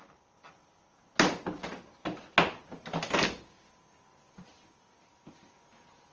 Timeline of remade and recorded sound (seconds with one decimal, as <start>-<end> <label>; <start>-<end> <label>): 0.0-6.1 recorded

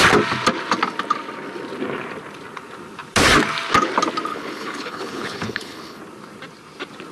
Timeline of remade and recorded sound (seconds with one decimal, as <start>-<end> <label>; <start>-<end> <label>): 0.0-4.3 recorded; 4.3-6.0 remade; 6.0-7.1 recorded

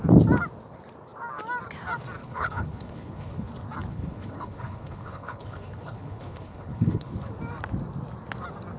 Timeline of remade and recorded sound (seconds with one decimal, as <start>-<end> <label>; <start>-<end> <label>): 0.0-2.2 recorded; 2.2-3.5 remade; 3.5-3.9 recorded; 3.9-7.3 remade; 7.3-8.8 recorded

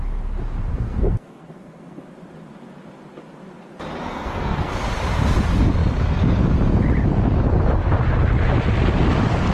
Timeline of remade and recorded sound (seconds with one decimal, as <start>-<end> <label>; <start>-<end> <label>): 0.0-0.7 recorded; 0.7-2.0 remade; 2.0-4.0 recorded; 4.0-4.7 remade; 4.7-9.5 recorded

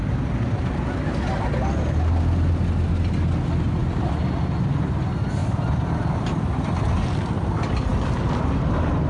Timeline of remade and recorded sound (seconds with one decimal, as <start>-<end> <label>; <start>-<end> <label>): 0.0-5.4 recorded; 5.4-6.2 remade; 6.2-9.1 recorded

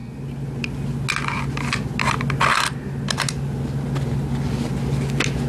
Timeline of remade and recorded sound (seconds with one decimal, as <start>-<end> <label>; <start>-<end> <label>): 0.0-5.5 recorded

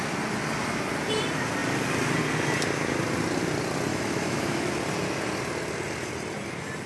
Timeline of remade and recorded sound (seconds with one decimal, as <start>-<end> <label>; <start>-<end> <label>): 0.0-3.9 recorded; 3.9-4.7 remade; 4.7-6.9 recorded